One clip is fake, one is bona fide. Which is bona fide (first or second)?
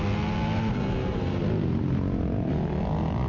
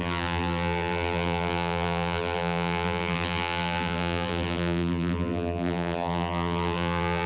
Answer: first